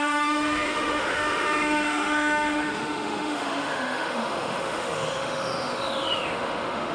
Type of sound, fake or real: fake